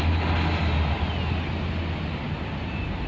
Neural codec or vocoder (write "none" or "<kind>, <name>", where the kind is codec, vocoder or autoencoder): none